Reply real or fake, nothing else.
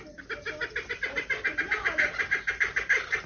real